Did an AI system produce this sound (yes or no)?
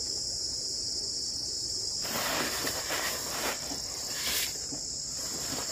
yes